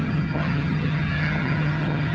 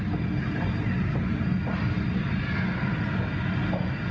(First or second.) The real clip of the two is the second